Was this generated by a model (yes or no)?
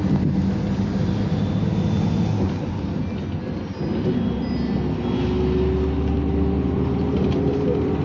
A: no